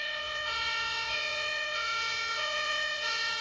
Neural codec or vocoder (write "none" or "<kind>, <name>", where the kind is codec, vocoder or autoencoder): vocoder, WaveNeXt